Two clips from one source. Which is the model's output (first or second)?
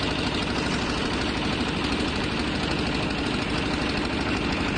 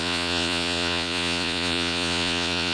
second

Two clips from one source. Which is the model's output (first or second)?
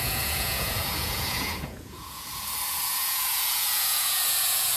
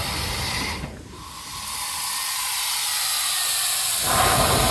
first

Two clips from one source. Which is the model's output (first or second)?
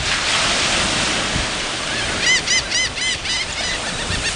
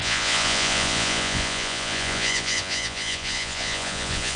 second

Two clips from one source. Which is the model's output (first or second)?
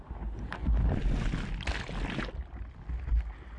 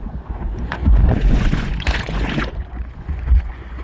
second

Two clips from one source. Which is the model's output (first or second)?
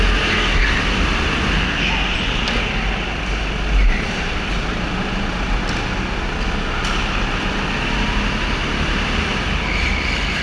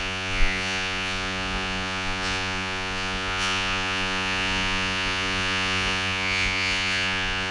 second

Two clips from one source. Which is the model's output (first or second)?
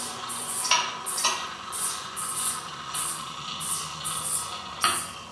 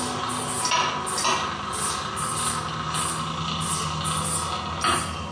first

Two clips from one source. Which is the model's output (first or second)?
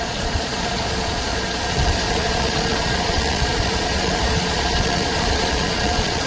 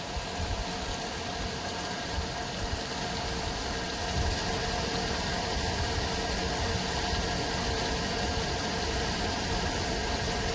first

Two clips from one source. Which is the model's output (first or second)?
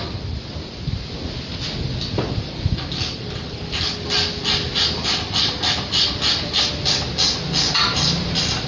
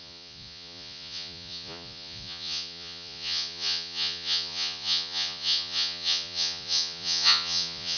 second